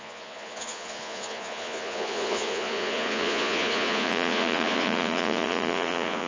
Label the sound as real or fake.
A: fake